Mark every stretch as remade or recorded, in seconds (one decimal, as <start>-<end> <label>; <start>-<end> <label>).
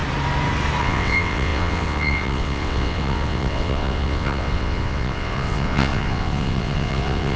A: 0.0-0.8 recorded; 0.8-7.4 remade